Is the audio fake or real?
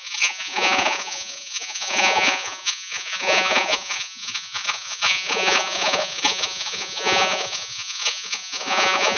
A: fake